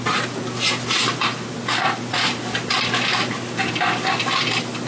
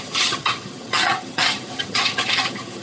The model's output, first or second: second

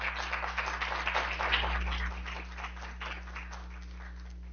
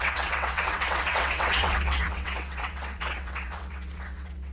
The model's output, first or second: second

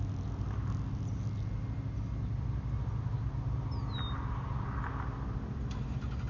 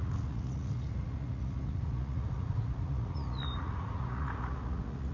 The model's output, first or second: second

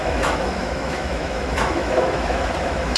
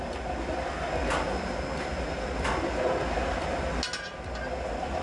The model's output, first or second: first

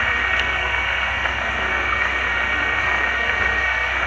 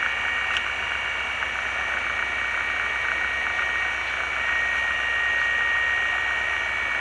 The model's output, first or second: first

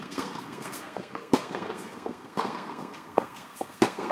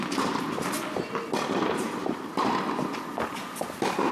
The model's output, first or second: first